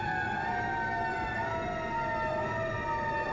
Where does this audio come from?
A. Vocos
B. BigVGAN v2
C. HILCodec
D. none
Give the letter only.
D